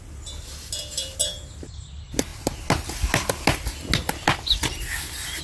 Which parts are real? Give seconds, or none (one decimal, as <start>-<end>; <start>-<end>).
0.0-5.4